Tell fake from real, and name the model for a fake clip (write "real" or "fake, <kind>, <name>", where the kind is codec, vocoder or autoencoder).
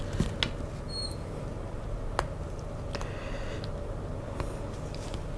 real